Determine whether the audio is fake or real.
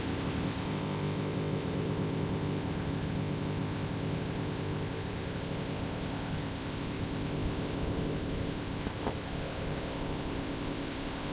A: fake